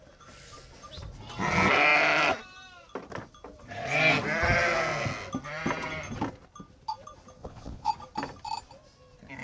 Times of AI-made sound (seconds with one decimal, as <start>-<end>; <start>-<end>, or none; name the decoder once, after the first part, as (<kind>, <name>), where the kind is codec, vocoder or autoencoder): 7.4-7.9 (vocoder, Vocos)

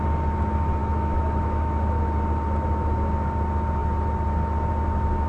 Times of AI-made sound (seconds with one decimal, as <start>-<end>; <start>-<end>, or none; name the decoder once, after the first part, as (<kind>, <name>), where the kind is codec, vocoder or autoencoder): 0.8-2.0 (autoencoder, DAC-VAE)

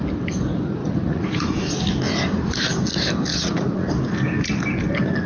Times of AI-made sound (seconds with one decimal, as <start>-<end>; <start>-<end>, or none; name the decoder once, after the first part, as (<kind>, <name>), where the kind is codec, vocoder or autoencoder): 0.8-1.6 (vocoder, Vocos); 3.3-3.9

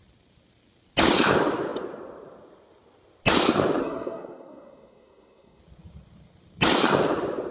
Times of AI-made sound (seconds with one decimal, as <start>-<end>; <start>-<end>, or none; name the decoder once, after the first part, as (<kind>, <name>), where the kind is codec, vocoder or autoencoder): 3.8-5.6 (codec, SNAC)

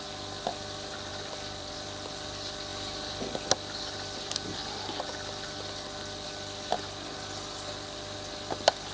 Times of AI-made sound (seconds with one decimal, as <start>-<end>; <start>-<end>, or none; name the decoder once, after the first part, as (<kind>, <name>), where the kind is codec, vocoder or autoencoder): 1.1-1.7 (vocoder, BigVGAN v2)

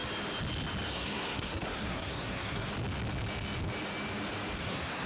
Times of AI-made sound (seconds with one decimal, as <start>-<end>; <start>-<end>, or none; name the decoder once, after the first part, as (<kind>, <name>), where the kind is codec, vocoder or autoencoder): 0.9-2.7 (codec, SNAC); 4.6-5.1

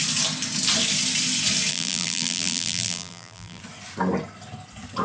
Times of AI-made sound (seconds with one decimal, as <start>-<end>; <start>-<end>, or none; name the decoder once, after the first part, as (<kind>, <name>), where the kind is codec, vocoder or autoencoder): 1.7-3.6 (vocoder, BigVGAN v2)